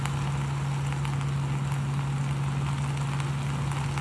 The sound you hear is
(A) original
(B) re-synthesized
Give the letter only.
A